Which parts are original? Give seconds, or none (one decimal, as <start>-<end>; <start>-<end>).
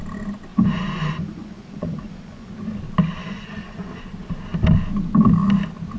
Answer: 0.0-0.5; 2.5-3.2; 4.0-6.0